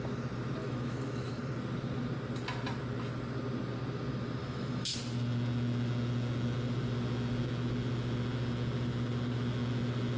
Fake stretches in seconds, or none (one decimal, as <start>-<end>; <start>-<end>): 0.6-1.4; 4.4-5.0